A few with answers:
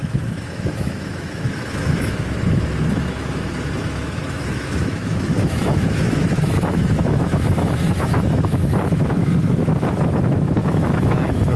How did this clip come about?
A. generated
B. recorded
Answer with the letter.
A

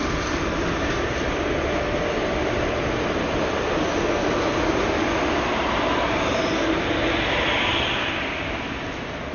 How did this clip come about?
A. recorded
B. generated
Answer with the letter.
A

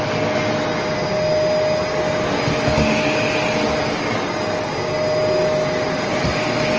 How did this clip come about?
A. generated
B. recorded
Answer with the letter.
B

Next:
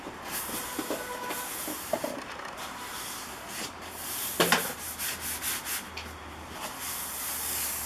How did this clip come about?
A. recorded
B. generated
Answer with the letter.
A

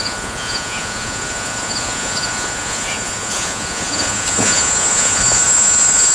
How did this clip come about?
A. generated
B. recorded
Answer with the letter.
A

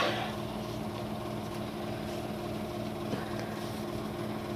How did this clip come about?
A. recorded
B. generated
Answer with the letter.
A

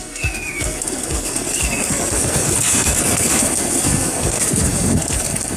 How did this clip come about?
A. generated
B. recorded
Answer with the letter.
A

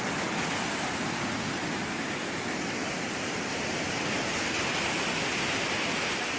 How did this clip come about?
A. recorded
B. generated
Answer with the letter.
A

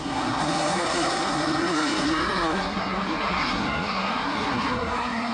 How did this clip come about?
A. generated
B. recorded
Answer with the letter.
A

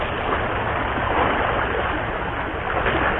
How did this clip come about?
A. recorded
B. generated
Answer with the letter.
A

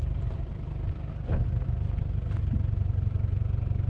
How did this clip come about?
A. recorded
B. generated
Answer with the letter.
B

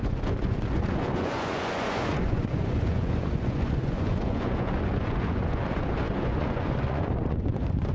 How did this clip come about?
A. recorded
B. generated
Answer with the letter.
B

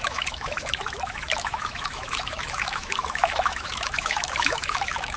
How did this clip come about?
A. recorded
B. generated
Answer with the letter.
B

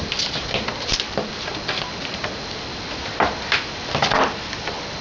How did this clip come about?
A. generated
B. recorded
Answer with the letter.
B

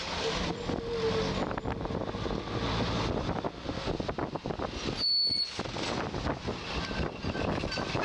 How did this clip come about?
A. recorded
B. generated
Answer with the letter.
A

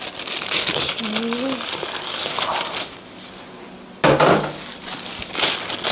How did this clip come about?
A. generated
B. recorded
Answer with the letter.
B